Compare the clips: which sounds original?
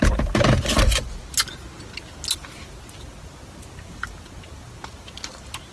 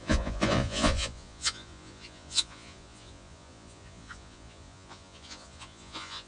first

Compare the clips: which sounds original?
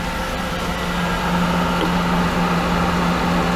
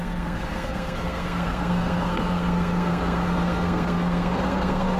first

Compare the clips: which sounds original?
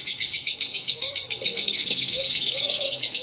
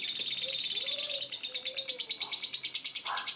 second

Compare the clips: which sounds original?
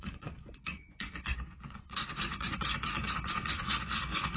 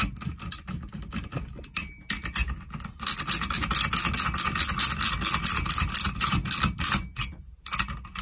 second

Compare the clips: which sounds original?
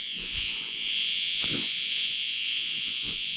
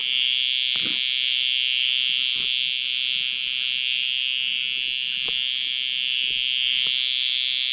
second